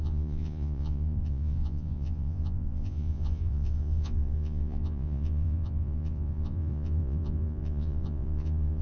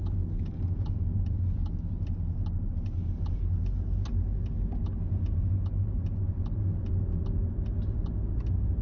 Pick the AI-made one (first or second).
first